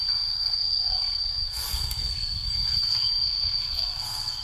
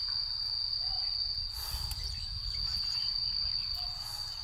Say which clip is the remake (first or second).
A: first